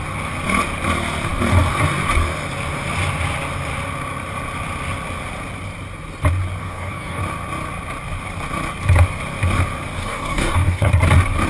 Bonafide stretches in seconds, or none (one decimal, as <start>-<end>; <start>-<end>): 0.0-6.6; 7.2-10.0; 10.9-11.5

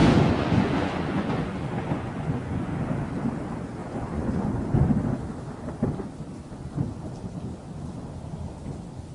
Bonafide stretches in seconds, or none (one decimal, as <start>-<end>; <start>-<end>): 2.7-3.8; 4.5-9.1

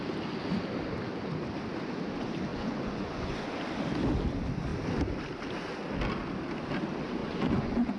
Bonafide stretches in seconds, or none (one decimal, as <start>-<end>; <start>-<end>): 0.0-2.5; 3.6-7.2

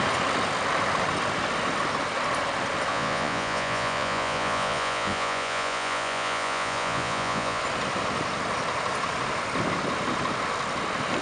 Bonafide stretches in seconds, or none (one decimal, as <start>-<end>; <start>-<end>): 0.0-2.9; 7.6-11.2

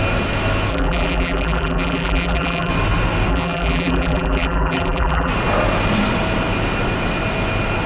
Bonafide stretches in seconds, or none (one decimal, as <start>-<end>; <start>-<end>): 0.0-0.7; 2.7-3.3; 5.3-7.9

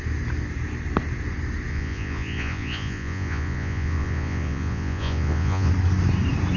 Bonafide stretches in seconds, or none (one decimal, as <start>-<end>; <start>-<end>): 0.0-1.7; 5.7-6.6